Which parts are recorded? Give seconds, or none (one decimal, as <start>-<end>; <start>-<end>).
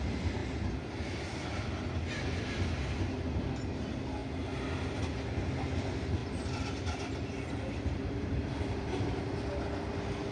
0.0-0.4; 1.6-6.2; 9.2-10.3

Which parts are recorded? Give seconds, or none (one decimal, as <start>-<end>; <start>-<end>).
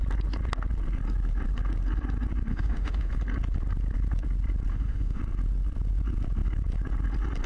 0.0-2.5; 3.1-4.7; 5.2-7.5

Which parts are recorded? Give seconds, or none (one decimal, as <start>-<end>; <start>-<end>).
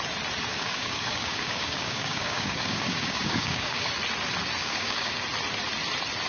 0.0-0.5; 3.9-4.6; 5.1-6.3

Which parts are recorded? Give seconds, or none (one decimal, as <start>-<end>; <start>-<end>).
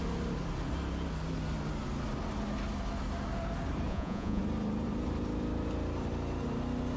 0.0-3.9; 4.4-7.0